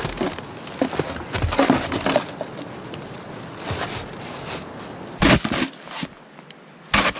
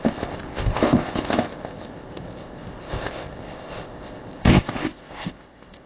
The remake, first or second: second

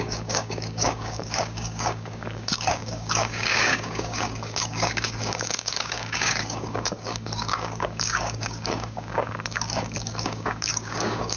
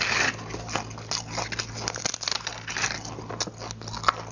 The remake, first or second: first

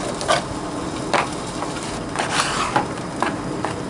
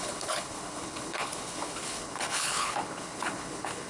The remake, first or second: second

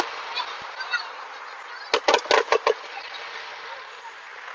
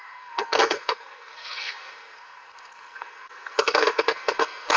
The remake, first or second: second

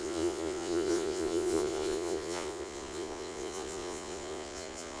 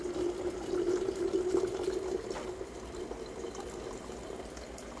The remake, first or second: first